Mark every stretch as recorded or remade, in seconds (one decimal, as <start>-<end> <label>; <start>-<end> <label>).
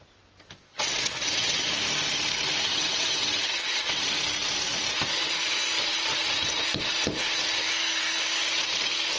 0.0-0.7 recorded; 0.7-1.7 remade; 1.7-2.7 recorded; 2.7-4.1 remade; 4.1-9.2 recorded